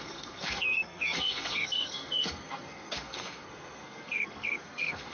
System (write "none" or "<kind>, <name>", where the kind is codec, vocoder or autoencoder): codec, SNAC